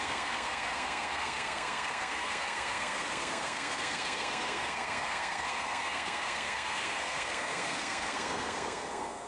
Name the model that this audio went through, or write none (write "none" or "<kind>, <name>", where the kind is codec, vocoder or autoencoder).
codec, SNAC